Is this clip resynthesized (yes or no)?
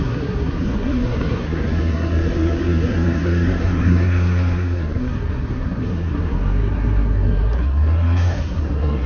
yes